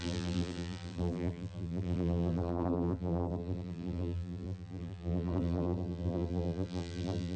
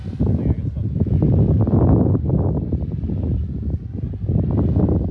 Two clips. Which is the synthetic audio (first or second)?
first